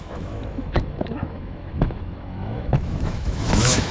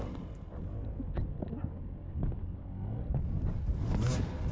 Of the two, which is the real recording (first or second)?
second